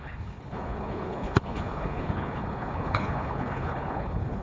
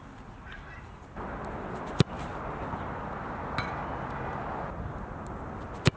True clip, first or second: second